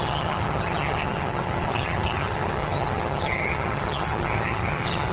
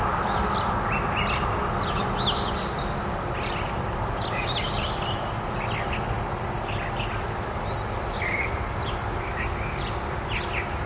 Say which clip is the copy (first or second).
first